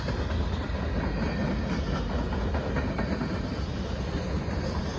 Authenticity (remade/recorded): recorded